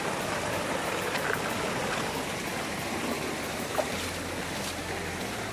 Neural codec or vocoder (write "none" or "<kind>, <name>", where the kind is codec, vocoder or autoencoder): vocoder, BigVGAN v2